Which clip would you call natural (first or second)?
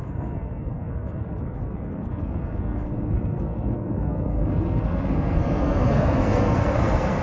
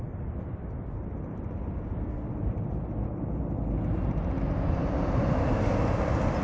second